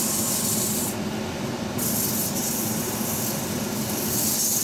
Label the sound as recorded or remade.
recorded